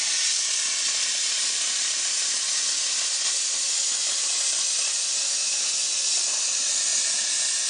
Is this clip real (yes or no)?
yes